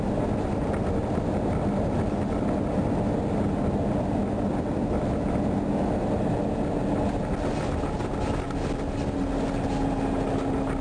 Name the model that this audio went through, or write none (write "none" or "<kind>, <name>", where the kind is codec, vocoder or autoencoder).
none